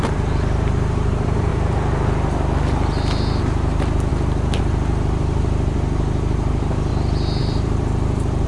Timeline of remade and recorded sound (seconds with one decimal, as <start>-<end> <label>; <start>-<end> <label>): 0.0-1.5 remade; 1.5-3.4 recorded; 3.4-4.1 remade; 4.1-4.6 recorded; 4.6-6.9 remade; 6.9-7.4 recorded; 7.4-8.5 remade